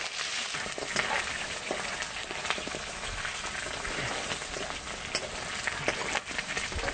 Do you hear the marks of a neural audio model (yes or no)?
no